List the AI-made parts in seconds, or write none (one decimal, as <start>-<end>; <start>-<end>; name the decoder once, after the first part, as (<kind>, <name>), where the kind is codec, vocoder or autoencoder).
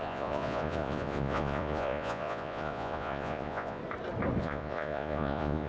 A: 0.0-3.8 (vocoder, Vocos); 4.4-5.7